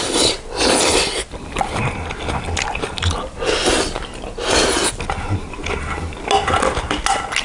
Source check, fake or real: real